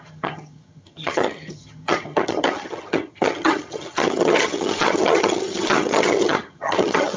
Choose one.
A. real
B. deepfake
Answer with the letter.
B